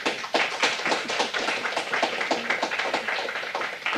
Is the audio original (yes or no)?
yes